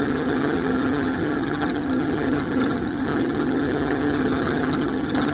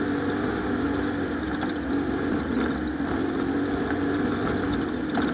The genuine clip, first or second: second